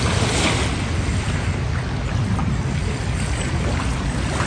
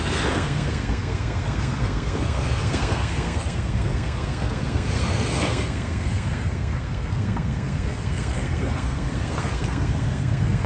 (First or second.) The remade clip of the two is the second